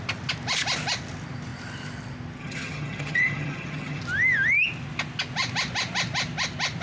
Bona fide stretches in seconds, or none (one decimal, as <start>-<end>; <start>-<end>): 0.0-2.4; 4.0-6.8